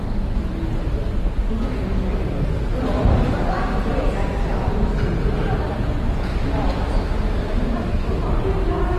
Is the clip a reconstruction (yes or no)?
no